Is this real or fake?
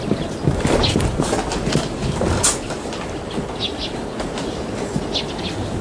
real